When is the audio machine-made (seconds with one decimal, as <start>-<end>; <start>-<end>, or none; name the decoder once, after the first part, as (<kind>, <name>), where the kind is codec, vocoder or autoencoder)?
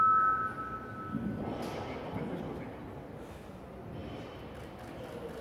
none